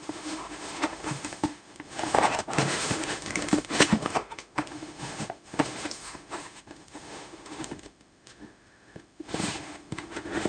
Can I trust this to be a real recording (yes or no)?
no